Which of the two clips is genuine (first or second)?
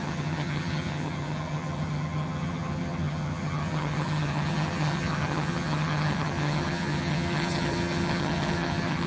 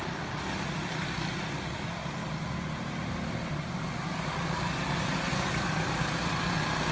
second